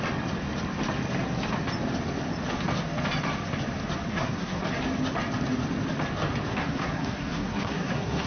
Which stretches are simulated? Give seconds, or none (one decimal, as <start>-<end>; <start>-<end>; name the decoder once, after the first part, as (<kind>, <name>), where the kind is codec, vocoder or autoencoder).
4.1-4.7 (codec, SNAC); 6.5-8.3